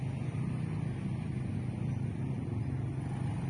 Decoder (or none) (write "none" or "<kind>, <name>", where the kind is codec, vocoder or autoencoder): none